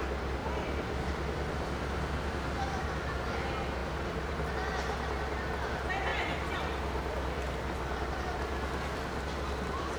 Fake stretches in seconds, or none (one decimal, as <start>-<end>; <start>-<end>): 0.4-1.1; 3.8-4.5; 6.1-8.4